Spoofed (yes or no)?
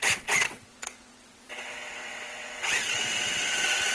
yes